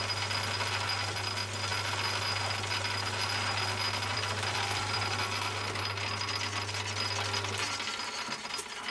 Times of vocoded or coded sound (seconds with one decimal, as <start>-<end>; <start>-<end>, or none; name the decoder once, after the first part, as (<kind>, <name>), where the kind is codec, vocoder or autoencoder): 4.1-5.0 (vocoder, BigVGAN v2)